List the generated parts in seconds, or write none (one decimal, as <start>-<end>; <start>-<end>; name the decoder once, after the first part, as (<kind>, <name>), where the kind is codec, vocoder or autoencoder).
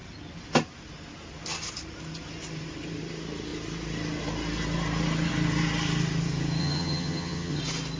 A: 6.6-7.6 (vocoder, HiFi-GAN)